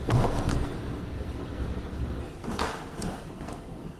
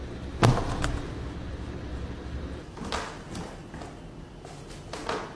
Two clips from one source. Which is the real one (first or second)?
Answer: second